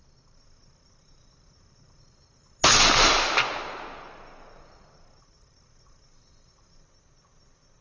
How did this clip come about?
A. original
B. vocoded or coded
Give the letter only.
A